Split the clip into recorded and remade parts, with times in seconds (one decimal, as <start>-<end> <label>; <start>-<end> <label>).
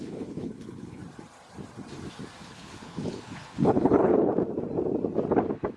0.0-1.0 remade; 1.0-2.4 recorded; 2.4-4.3 remade; 4.3-5.8 recorded